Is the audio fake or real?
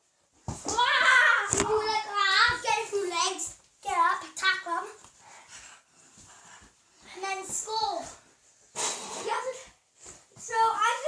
real